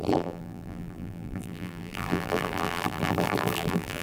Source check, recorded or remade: remade